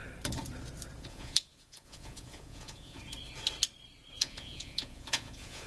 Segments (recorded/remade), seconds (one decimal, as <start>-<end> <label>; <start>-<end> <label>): 0.0-1.0 recorded; 1.0-3.0 remade; 3.0-4.2 recorded; 4.2-5.7 remade